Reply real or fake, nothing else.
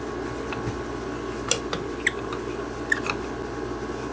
real